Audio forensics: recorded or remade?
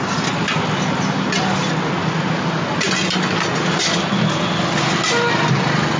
recorded